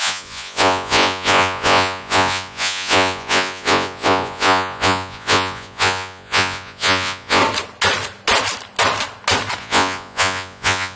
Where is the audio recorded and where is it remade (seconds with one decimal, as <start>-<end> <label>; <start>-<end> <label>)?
0.0-7.4 remade; 7.4-9.6 recorded; 9.6-11.0 remade